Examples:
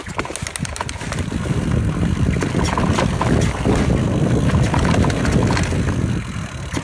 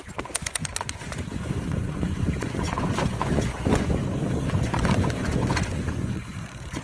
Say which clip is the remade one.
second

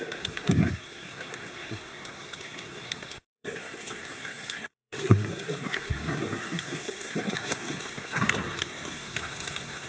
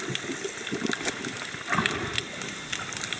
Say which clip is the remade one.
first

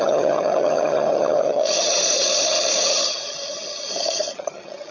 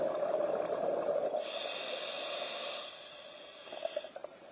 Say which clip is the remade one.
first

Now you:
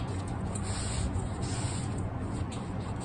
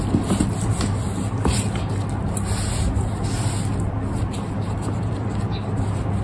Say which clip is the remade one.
first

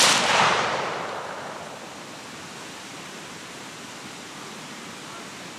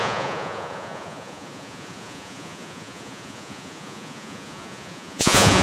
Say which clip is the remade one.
second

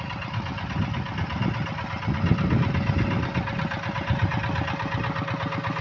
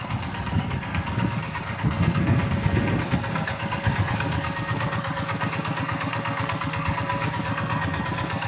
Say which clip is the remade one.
second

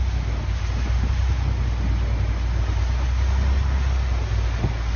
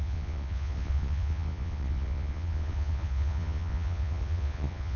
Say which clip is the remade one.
second